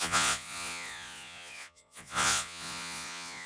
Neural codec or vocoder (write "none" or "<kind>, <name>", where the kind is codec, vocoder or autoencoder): vocoder, Vocos